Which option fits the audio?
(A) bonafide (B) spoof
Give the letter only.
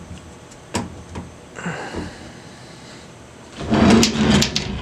A